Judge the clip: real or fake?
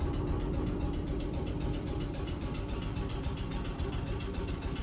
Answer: fake